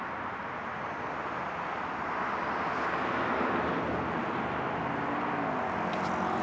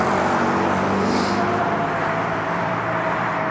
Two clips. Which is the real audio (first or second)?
first